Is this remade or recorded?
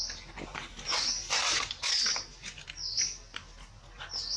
recorded